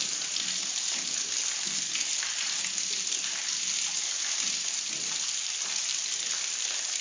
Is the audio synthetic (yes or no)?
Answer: no